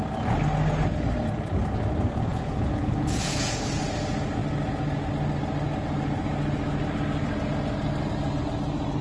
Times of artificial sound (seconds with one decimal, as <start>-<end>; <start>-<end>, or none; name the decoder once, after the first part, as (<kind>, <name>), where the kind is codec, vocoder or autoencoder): 2.3-3.6 (vocoder, Vocos)